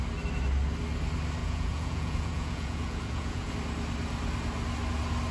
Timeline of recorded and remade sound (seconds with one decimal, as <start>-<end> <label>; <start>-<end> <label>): 0.0-1.4 recorded; 1.4-3.5 remade; 3.5-5.3 recorded